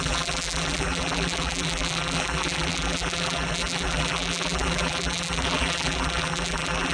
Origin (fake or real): fake